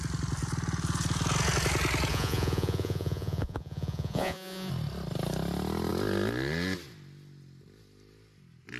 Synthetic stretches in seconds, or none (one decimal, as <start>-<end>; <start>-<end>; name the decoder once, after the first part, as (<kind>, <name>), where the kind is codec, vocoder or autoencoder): 2.1-4.7 (vocoder, Vocos)